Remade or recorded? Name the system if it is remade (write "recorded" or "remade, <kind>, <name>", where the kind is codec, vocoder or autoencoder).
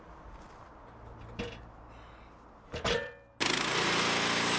recorded